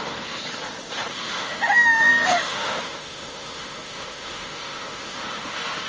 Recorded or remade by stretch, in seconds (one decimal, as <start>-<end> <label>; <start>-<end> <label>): 0.0-0.4 remade; 0.4-1.1 recorded; 1.1-5.9 remade

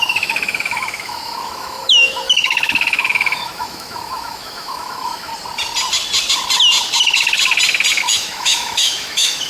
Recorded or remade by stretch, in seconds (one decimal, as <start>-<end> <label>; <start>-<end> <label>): 0.0-5.3 remade; 5.3-8.0 recorded; 8.0-9.5 remade

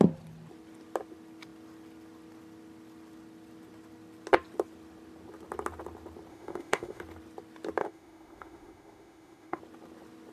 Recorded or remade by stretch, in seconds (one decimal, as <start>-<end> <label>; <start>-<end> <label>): 0.0-6.3 recorded; 6.3-7.0 remade; 7.0-7.8 recorded; 7.8-9.6 remade; 9.6-10.3 recorded

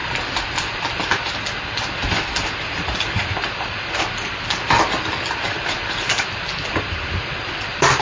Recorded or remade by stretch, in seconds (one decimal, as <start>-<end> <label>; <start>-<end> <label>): 0.0-8.0 recorded

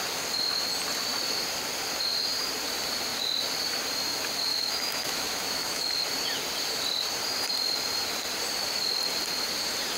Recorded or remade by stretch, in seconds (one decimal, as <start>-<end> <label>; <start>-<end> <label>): 0.0-4.5 recorded; 4.5-5.9 remade; 5.9-10.0 recorded

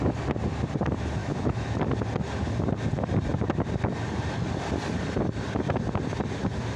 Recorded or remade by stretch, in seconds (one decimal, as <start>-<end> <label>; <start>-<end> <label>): 0.0-1.2 recorded; 1.2-1.8 remade; 1.8-6.8 recorded